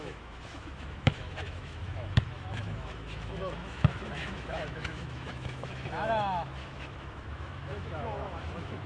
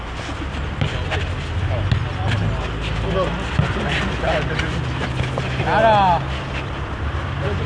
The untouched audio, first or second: second